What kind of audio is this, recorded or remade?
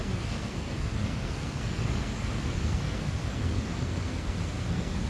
remade